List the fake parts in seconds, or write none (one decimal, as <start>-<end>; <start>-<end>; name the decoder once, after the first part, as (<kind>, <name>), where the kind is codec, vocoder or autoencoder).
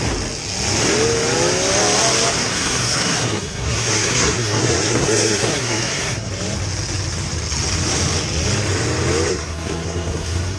2.4-6.3 (codec, SNAC); 9.3-10.6